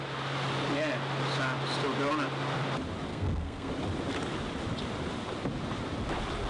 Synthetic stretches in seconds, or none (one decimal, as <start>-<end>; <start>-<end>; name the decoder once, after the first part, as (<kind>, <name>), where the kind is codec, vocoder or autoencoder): 3.1-3.7 (codec, SNAC)